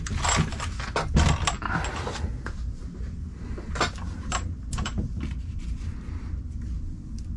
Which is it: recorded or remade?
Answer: recorded